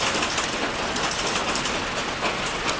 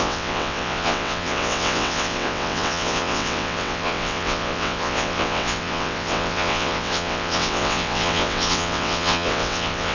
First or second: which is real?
first